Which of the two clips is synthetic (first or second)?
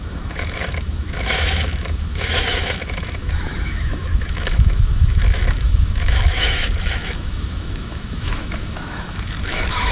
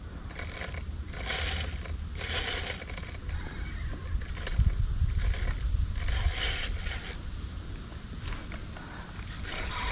first